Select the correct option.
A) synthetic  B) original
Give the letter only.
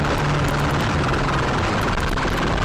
B